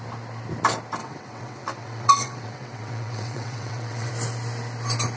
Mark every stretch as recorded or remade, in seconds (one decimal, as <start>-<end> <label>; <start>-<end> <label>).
0.0-1.0 recorded; 1.0-4.1 remade; 4.1-5.2 recorded